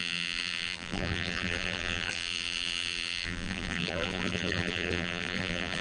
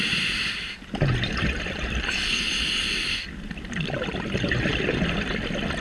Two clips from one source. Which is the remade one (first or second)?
first